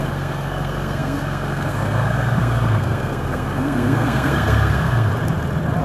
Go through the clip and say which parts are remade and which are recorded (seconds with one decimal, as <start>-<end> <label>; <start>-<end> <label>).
0.0-5.1 remade; 5.1-5.8 recorded